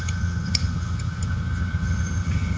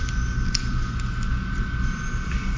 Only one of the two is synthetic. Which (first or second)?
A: first